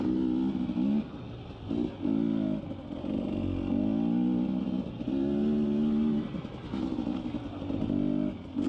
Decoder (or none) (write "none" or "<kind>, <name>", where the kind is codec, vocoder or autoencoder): none